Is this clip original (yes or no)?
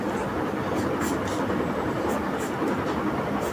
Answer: yes